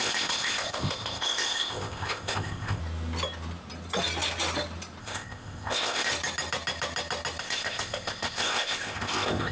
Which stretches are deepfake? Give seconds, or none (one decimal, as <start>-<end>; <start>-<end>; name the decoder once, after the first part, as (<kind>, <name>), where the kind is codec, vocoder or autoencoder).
0.0-2.8 (codec, ZipCodec); 5.0-6.1; 7.4-9.5